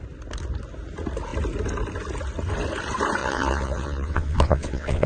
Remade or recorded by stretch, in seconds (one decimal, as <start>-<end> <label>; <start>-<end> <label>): 0.0-3.2 recorded; 3.2-5.1 remade